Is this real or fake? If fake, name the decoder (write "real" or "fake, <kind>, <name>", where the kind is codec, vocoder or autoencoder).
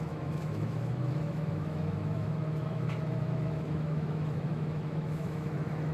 fake, autoencoder, DAC-VAE